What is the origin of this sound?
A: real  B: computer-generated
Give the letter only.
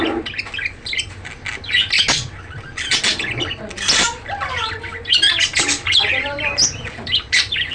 A